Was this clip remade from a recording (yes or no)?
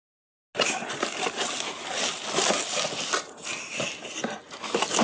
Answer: no